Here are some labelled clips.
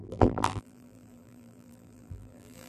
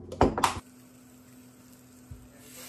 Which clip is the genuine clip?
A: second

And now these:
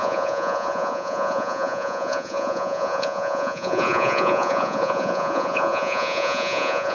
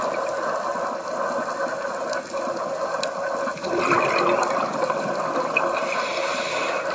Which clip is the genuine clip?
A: second